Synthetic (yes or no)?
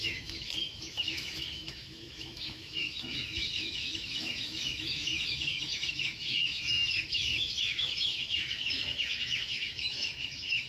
yes